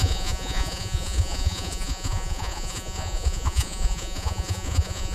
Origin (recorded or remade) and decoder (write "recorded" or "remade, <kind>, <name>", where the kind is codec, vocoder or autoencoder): remade, vocoder, Vocos